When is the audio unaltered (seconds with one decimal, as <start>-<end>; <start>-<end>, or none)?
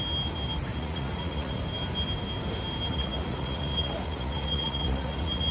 0.0-0.7; 1.6-2.9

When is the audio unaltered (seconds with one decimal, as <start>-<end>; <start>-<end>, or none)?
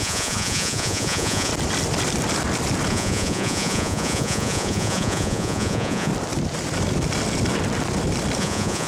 1.5-2.9; 6.1-8.4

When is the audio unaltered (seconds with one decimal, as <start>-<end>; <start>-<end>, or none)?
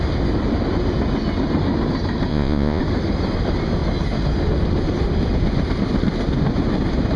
0.0-2.3; 2.8-7.2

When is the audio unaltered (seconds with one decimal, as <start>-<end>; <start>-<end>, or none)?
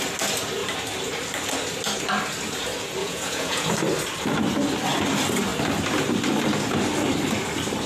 0.0-3.0; 3.7-7.9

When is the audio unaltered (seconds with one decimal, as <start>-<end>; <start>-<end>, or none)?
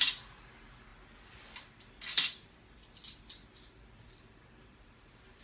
0.0-5.4